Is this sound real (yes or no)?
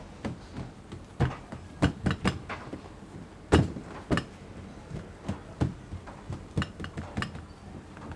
yes